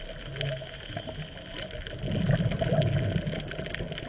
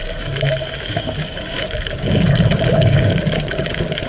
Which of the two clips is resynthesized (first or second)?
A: second